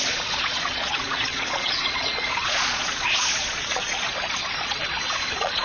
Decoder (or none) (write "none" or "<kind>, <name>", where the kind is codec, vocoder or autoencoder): vocoder, Vocos